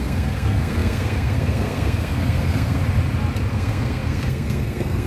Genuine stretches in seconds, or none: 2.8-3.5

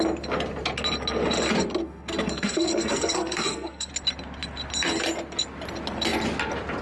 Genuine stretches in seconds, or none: 0.0-1.8; 3.9-6.8

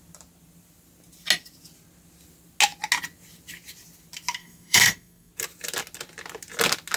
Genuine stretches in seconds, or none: 0.0-4.4; 5.3-7.0

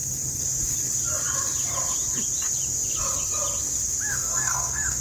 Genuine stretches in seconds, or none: 0.0-4.1

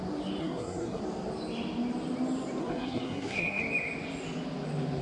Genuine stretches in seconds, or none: 0.0-0.4; 1.0-2.6; 3.6-5.0

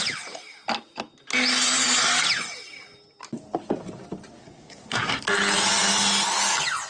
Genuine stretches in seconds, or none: 0.0-4.4; 5.2-6.9